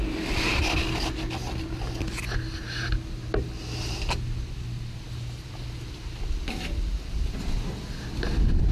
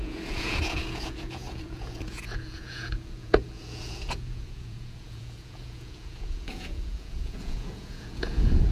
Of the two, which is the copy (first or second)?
second